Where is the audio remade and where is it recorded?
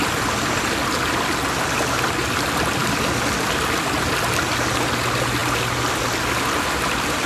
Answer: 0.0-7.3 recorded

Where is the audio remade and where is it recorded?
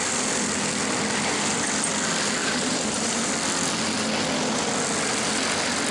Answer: 0.0-2.4 recorded; 2.4-3.3 remade; 3.3-5.9 recorded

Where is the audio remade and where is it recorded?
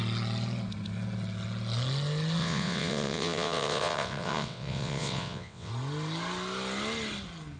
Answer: 0.0-2.4 recorded; 2.4-5.7 remade; 5.7-7.6 recorded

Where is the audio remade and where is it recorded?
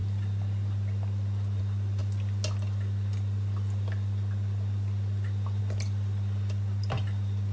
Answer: 0.0-7.5 recorded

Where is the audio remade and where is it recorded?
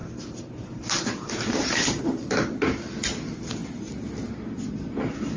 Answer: 0.0-2.0 remade; 2.0-5.4 recorded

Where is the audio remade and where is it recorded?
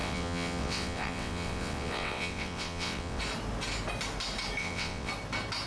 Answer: 0.0-3.2 remade; 3.2-4.6 recorded; 4.6-5.1 remade; 5.1-5.7 recorded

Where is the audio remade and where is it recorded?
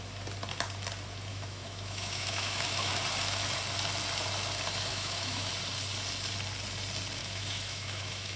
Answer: 0.0-1.3 recorded; 1.3-2.9 remade; 2.9-4.9 recorded; 4.9-5.5 remade; 5.5-7.2 recorded; 7.2-8.4 remade